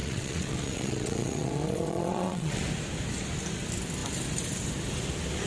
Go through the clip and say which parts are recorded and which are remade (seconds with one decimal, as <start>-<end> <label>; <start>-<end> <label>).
0.0-2.6 remade; 2.6-5.5 recorded